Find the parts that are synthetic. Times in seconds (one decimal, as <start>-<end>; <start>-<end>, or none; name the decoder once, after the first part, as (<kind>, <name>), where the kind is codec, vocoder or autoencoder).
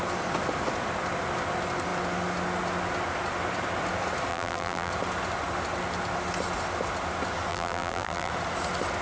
4.3-4.9 (vocoder, BigVGAN v2); 7.5-8.3